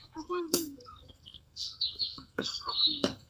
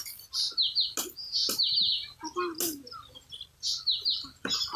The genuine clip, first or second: second